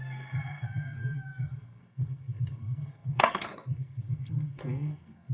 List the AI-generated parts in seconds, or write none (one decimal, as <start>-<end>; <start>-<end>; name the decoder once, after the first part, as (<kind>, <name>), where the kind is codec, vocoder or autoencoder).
0.0-5.3 (codec, SNAC)